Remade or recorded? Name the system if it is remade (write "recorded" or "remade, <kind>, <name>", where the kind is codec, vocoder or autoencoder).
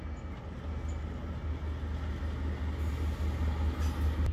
recorded